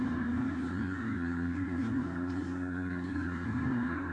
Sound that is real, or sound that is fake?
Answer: fake